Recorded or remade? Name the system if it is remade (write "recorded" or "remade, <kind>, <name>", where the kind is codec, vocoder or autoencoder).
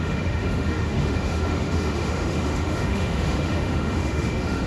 remade, autoencoder, DAC-VAE